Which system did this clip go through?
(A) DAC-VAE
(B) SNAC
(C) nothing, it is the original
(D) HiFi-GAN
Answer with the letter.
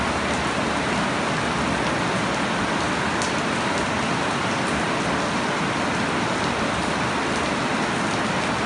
C